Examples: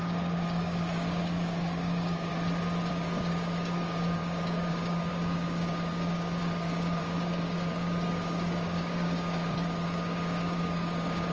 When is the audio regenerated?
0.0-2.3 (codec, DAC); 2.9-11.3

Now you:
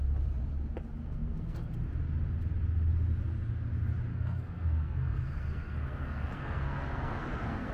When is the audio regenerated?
1.0-1.7 (codec, SNAC); 4.1-7.7

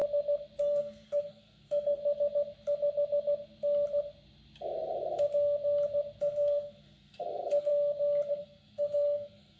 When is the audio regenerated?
0.6-2.0 (codec, SNAC); 6.2-7.7; 8.3-9.6

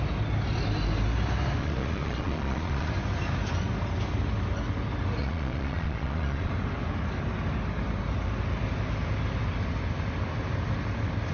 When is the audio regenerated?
1.6-2.9 (vocoder, Vocos); 5.2-6.5

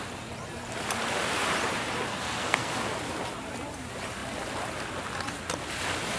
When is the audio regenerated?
2.1-2.7 (codec, SNAC)

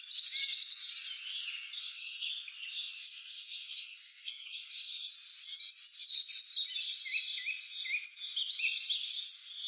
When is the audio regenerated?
1.8-2.3 (codec, SNAC); 3.0-5.1

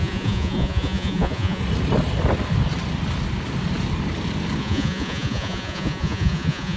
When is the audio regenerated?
0.0-1.6 (vocoder, Vocos); 4.6-6.8